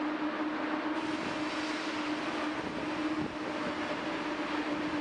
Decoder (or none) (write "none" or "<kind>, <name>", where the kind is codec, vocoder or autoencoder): none